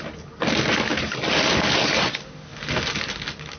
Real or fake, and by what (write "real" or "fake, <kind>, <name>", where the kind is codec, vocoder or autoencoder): real